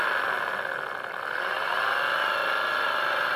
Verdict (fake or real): real